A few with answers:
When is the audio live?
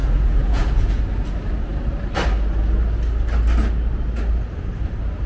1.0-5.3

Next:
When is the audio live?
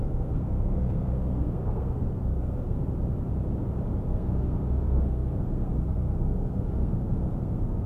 2.8-4.1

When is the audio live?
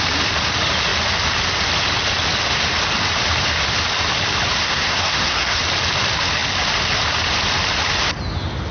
0.0-4.6; 5.6-8.7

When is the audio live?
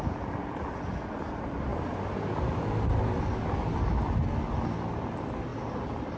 0.0-6.2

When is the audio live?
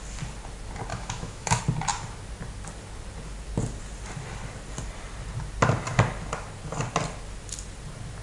0.0-0.9; 1.6-8.2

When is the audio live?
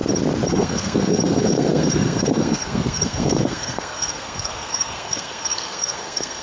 0.0-0.5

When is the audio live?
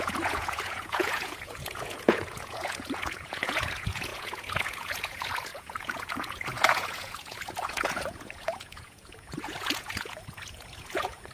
none